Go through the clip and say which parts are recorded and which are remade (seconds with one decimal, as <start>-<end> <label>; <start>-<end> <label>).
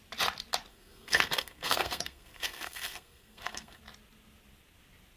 0.0-0.7 recorded; 0.7-3.8 remade; 3.8-5.2 recorded